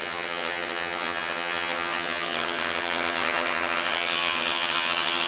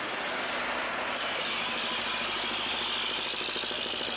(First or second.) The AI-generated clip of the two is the first